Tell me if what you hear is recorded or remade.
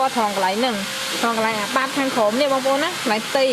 recorded